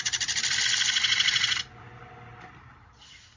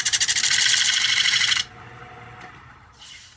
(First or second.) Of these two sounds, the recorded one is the first